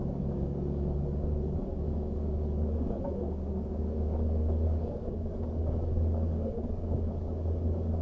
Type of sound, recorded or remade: remade